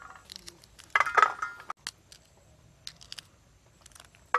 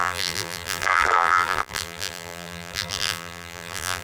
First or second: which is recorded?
first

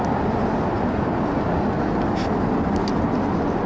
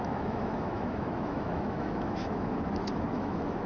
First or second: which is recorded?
first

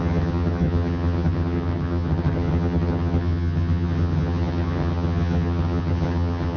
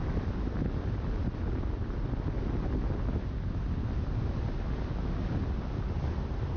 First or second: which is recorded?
second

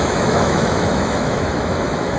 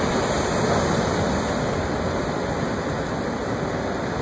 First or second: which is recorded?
second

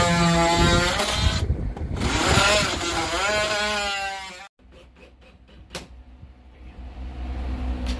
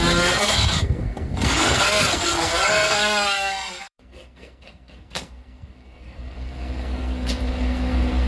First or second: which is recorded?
first